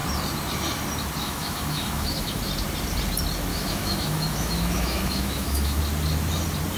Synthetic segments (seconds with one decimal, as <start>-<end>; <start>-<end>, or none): 1.2-2.4; 3.5-5.8